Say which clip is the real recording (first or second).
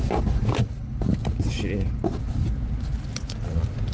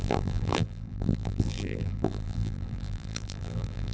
first